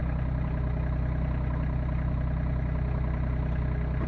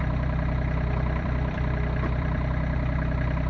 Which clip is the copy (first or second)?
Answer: second